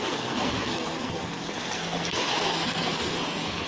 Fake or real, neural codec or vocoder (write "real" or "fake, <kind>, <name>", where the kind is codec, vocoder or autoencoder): fake, codec, SNAC